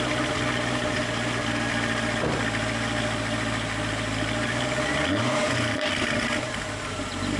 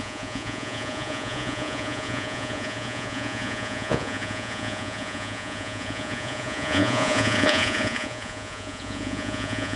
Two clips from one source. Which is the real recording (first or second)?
first